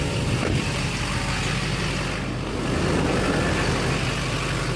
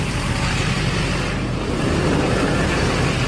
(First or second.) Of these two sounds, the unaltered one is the first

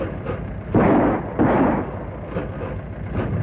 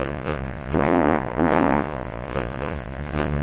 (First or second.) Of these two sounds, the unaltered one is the first